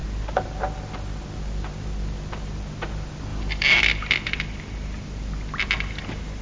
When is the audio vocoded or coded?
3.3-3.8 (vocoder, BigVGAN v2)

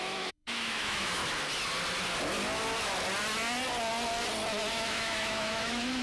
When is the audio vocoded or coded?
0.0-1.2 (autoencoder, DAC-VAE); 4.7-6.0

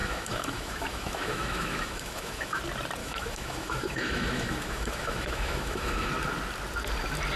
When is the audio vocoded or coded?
0.0-2.6 (autoencoder, DAC-VAE); 3.0-6.1

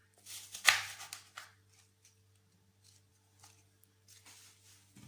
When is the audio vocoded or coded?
none

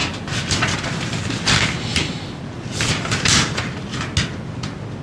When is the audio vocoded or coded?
0.0-1.2 (vocoder, BigVGAN v2); 1.9-3.6